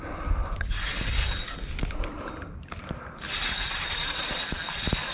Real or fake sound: real